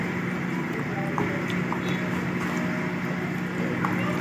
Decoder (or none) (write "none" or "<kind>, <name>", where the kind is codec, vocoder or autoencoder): vocoder, BigVGAN v2